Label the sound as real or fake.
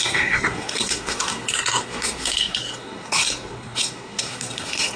fake